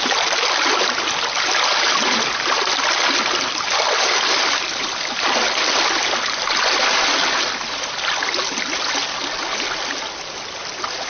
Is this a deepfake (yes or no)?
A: no